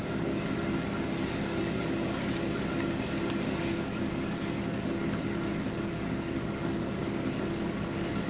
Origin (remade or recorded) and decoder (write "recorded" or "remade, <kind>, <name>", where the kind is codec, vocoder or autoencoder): remade, codec, DAC